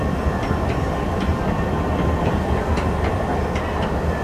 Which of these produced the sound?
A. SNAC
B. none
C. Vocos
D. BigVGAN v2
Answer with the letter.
B